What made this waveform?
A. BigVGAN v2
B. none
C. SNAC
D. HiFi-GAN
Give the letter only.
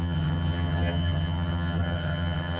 D